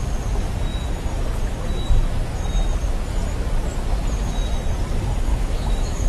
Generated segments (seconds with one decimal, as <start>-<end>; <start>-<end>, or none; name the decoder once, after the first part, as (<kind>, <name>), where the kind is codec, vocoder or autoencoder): 5.3-6.1 (autoencoder, DAC-VAE)